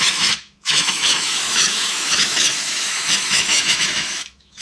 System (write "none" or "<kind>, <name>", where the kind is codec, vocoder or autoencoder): autoencoder, DAC-VAE